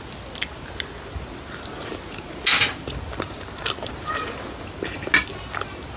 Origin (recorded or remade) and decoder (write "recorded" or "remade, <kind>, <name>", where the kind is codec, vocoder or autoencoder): recorded